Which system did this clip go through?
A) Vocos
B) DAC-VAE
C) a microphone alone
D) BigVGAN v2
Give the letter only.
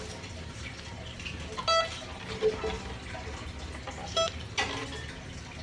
C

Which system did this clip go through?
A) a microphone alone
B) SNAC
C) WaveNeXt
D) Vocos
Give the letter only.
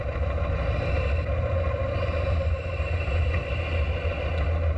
A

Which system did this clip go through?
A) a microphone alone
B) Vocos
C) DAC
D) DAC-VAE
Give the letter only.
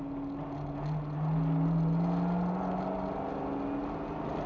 A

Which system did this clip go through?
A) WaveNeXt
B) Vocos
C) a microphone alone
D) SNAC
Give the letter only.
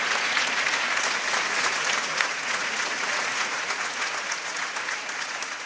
B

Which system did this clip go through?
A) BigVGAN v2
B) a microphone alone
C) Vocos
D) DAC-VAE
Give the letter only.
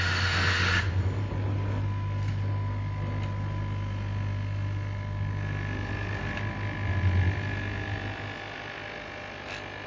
B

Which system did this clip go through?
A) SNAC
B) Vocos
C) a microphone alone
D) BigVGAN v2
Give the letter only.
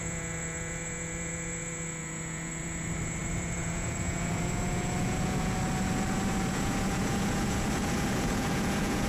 B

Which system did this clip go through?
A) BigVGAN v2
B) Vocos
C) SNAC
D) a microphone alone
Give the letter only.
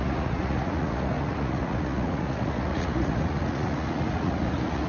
B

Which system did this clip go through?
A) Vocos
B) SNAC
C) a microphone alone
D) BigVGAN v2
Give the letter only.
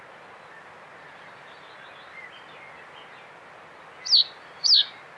C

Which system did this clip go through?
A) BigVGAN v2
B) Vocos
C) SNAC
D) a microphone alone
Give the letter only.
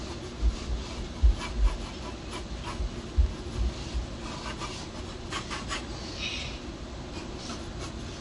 D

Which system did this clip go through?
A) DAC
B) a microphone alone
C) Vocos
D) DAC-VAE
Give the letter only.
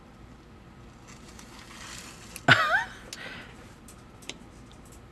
B